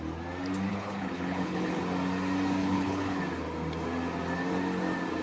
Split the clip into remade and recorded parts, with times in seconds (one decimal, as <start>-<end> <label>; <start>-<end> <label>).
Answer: 0.0-0.7 recorded; 0.7-1.8 remade; 1.8-2.6 recorded; 2.6-3.2 remade; 3.2-5.2 recorded